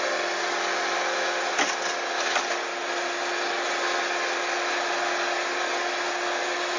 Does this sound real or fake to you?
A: real